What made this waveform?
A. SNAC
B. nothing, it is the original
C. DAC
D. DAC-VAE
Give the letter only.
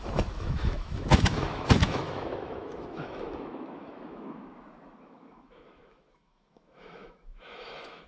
D